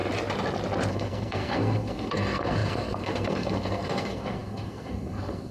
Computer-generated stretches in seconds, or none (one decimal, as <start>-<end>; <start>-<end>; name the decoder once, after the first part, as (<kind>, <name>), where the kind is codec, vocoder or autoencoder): 0.9-5.5 (codec, SNAC)